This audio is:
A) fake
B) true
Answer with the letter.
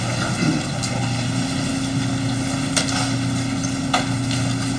B